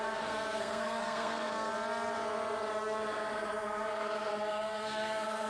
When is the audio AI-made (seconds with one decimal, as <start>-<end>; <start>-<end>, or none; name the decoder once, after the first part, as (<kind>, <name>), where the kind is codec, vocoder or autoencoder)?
0.0-1.7 (codec, SNAC); 3.3-5.5